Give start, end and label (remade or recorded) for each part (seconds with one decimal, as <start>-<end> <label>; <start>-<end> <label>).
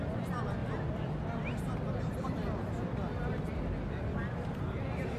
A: 0.0-5.2 recorded